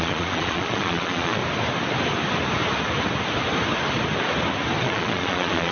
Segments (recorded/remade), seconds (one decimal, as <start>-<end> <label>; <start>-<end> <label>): 0.0-1.4 remade; 1.4-4.8 recorded; 4.8-5.7 remade

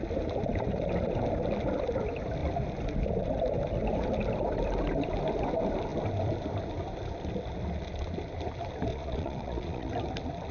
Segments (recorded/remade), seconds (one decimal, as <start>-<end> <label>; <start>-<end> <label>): 0.0-8.9 recorded; 8.9-9.9 remade; 9.9-10.5 recorded

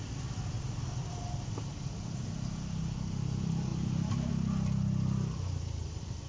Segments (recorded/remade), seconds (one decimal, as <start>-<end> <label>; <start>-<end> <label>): 0.0-6.3 recorded

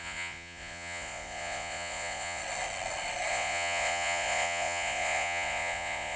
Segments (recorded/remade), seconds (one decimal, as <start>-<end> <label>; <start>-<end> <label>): 0.0-2.4 remade; 2.4-3.3 recorded; 3.3-6.2 remade

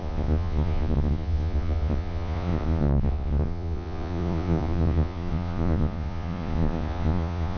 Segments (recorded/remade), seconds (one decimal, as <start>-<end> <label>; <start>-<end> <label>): 0.0-7.6 remade